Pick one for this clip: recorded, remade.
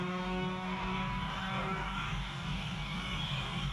remade